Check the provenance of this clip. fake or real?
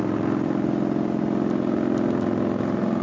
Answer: real